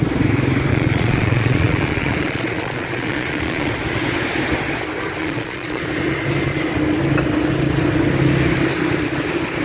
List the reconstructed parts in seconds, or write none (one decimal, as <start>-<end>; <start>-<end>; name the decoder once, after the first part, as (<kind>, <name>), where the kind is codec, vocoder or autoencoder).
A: 0.7-3.7 (vocoder, Vocos); 5.2-5.8